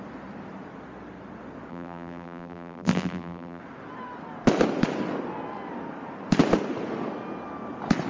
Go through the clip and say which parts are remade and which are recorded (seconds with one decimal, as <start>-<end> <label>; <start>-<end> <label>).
0.0-1.7 recorded; 1.7-3.6 remade; 3.6-8.1 recorded